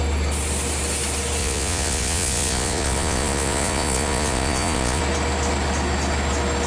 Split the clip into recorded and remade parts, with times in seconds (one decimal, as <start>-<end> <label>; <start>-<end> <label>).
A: 0.0-1.4 recorded; 1.4-5.0 remade; 5.0-6.7 recorded

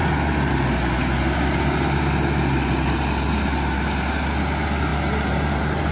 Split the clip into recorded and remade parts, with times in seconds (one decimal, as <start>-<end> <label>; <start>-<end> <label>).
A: 0.0-5.9 recorded

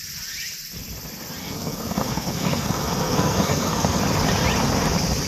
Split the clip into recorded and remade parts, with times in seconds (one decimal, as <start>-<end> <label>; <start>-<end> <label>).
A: 0.0-1.4 recorded; 1.4-4.0 remade; 4.0-5.3 recorded

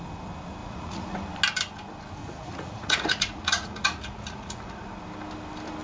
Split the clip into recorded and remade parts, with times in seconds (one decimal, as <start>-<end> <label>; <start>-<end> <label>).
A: 0.0-0.6 recorded; 0.6-1.2 remade; 1.2-2.2 recorded; 2.2-5.0 remade; 5.0-5.8 recorded